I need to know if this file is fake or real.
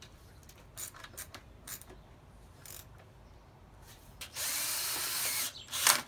fake